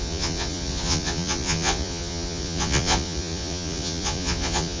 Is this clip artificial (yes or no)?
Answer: yes